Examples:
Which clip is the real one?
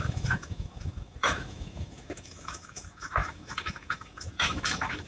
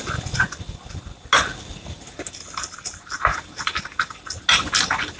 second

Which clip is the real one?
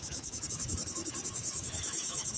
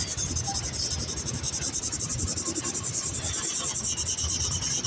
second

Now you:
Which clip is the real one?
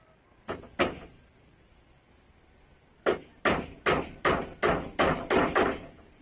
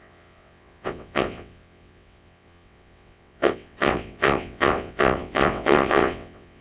first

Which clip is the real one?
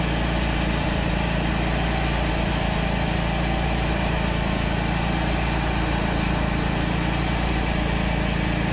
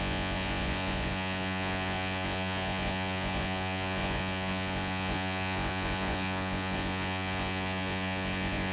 first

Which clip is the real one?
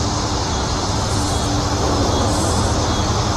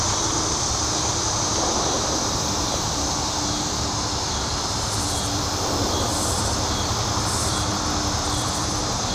first